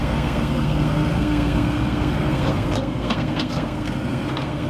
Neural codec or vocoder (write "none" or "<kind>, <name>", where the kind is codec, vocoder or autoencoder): codec, SNAC